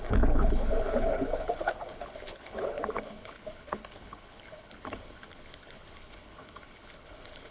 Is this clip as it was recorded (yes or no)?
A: no